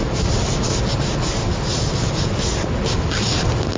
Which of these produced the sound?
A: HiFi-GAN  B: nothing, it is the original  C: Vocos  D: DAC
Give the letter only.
B